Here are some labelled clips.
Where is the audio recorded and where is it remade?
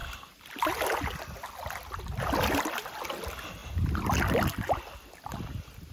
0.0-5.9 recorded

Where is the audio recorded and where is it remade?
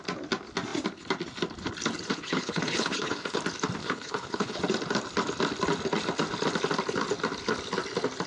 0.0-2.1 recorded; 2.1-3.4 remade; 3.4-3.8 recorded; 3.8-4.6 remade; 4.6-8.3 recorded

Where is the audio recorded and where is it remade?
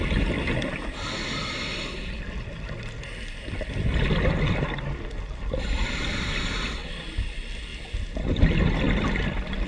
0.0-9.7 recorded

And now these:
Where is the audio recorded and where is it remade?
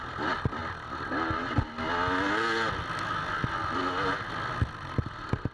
0.0-5.5 recorded